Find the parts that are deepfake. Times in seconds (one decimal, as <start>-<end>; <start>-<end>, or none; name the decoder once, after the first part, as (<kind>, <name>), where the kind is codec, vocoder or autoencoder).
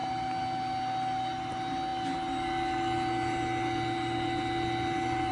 none